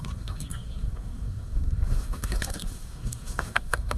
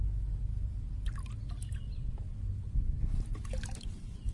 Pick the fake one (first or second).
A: first